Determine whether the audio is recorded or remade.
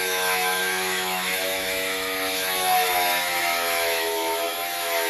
remade